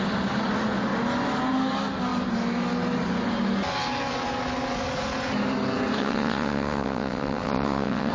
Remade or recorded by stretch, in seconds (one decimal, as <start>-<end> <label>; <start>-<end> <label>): 0.0-6.0 recorded; 6.0-8.1 remade

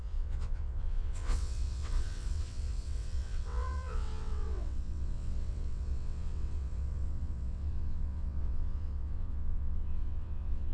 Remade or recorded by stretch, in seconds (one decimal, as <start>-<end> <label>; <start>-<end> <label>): 0.0-10.7 remade